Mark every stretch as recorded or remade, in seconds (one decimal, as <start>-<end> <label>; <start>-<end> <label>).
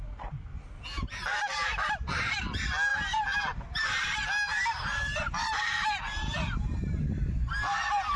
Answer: 0.0-1.7 recorded; 1.7-2.4 remade; 2.4-2.9 recorded; 2.9-7.6 remade; 7.6-8.2 recorded